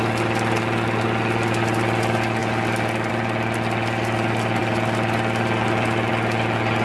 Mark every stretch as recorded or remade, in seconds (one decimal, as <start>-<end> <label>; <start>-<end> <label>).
0.0-6.8 recorded